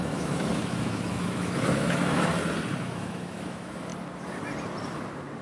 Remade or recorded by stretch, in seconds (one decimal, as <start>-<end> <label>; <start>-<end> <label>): 0.0-2.3 remade; 2.3-2.8 recorded; 2.8-3.9 remade; 3.9-5.4 recorded